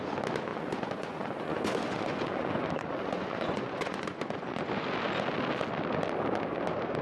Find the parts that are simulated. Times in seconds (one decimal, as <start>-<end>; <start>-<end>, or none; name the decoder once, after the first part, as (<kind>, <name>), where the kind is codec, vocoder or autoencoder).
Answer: 0.5-4.7 (vocoder, Vocos)